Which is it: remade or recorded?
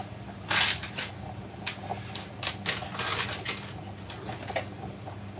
recorded